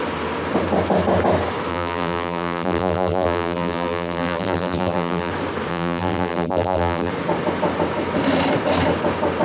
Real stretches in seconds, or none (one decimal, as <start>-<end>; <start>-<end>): 0.0-1.7; 5.3-5.7; 7.1-9.4